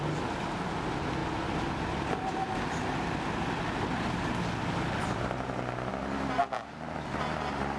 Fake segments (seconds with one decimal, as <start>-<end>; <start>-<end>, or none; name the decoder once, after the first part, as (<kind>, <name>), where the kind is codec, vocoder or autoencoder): none